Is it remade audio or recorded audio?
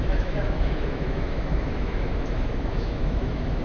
remade